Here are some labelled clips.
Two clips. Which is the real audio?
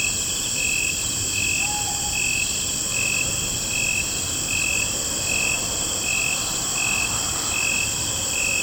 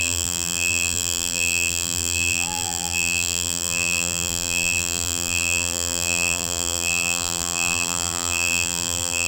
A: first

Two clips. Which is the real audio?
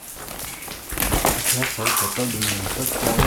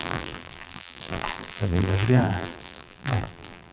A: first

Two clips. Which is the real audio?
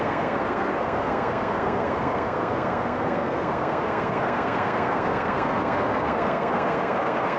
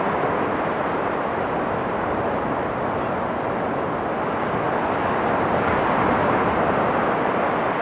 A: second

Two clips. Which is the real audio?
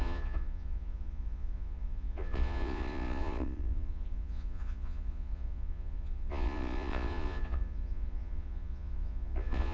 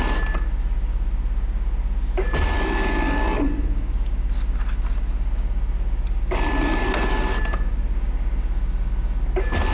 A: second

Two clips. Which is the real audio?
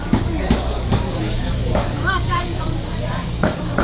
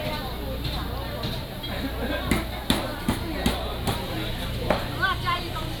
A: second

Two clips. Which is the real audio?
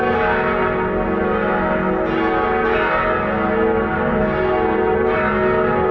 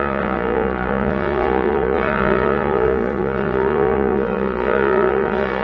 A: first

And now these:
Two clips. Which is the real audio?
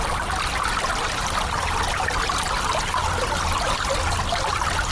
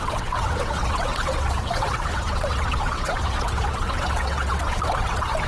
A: first